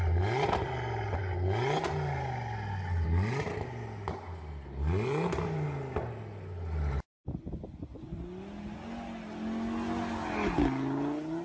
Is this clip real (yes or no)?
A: yes